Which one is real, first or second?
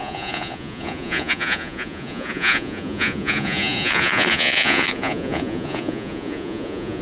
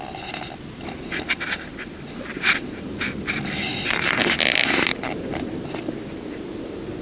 second